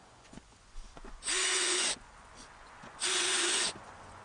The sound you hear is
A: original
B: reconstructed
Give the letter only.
B